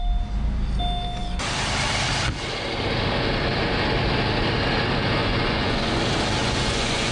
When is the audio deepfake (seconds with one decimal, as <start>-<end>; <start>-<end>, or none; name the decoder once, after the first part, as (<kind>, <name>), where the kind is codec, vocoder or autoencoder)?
5.2-6.0 (vocoder, Vocos); 6.4-7.1